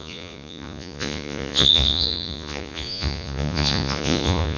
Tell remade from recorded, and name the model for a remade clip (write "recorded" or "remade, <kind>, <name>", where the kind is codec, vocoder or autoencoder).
remade, vocoder, Vocos